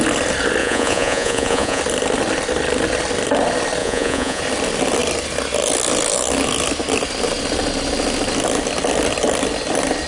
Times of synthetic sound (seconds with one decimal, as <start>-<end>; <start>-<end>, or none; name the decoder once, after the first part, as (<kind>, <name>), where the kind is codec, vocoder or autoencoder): 0.6-1.8 (vocoder, Vocos); 3.8-4.4

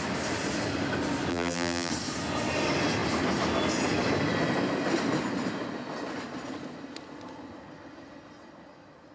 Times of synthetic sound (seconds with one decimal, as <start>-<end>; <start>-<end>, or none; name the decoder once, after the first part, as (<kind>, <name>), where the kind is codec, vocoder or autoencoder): 1.3-1.9 (vocoder, BigVGAN v2)

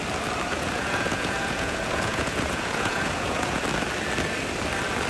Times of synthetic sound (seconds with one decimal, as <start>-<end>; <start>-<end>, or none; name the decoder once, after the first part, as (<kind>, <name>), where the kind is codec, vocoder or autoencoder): 0.5-3.6 (vocoder, Vocos)

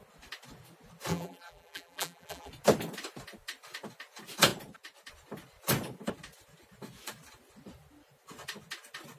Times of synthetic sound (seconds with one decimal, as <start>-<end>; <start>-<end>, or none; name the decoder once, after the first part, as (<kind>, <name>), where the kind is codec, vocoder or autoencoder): 1.1-2.5 (vocoder, BigVGAN v2)

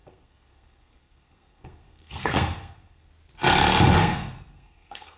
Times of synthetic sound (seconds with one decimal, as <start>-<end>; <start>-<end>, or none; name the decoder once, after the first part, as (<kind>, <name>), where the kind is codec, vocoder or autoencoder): 0.0-3.1 (codec, SNAC); 4.0-5.2

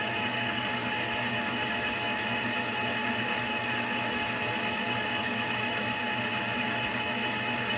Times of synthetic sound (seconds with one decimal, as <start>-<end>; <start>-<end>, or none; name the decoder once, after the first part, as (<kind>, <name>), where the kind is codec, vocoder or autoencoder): 0.0-0.8 (autoencoder, DAC-VAE); 1.3-7.8

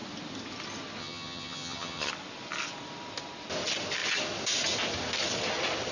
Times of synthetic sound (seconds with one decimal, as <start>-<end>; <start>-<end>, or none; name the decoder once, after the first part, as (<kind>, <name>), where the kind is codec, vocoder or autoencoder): 1.0-2.1 (vocoder, HiFi-GAN)